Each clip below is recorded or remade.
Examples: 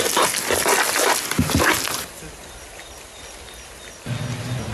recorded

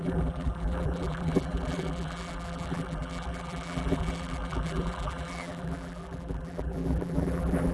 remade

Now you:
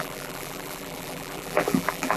remade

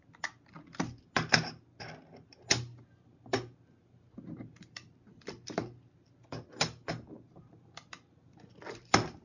recorded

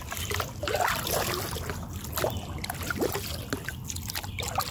recorded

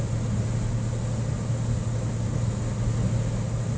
recorded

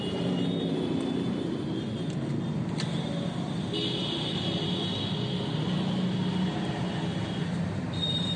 recorded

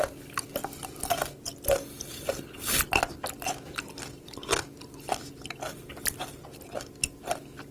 recorded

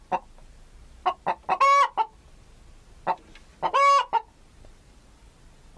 recorded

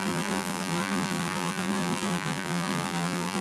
remade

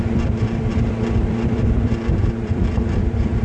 remade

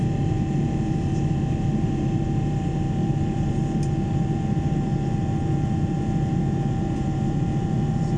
remade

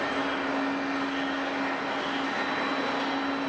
recorded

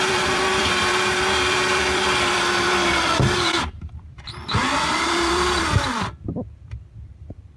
remade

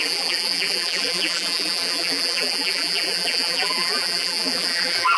remade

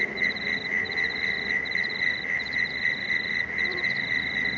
remade